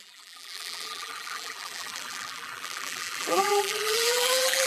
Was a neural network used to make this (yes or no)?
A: yes